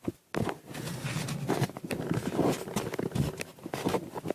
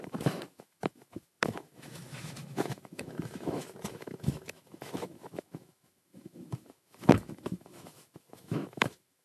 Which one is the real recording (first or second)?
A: first